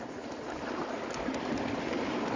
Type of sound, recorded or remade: recorded